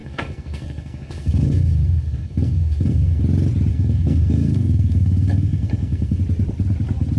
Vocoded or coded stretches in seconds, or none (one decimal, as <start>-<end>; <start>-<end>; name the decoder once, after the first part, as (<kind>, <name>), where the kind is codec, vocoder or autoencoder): 0.0-3.2 (codec, SNAC); 3.7-6.2